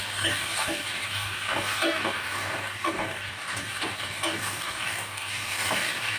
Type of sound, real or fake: fake